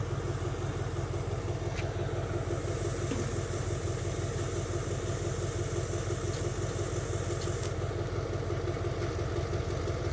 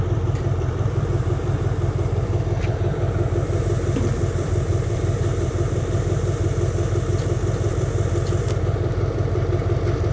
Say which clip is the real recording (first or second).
first